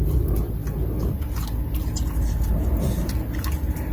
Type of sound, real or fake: real